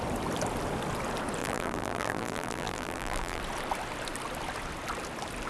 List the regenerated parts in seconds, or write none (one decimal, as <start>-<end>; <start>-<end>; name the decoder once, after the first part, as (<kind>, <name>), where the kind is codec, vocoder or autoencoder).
1.4-3.4 (vocoder, BigVGAN v2)